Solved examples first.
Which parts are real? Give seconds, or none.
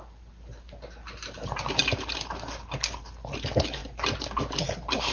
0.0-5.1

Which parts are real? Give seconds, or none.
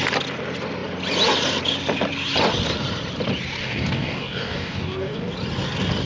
0.0-3.6; 5.3-6.1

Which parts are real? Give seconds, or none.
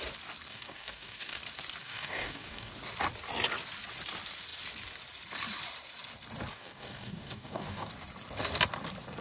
0.0-0.5; 1.4-1.8; 2.7-6.5; 7.9-9.2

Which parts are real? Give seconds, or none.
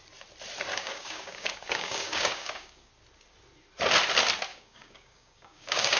0.0-0.7; 2.9-4.5